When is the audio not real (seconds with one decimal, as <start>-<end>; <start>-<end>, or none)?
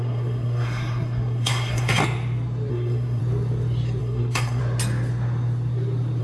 0.0-2.0; 2.7-3.2; 4.0-4.6